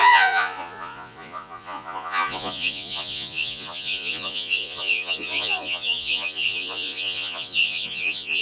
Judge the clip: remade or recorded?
remade